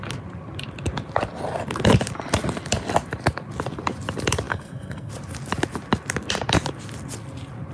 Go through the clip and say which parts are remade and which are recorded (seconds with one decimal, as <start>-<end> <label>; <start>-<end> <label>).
0.0-4.5 recorded; 4.5-5.1 remade; 5.1-7.7 recorded